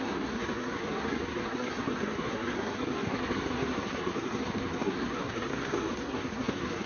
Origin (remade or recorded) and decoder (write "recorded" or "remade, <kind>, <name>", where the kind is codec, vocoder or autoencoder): remade, codec, SNAC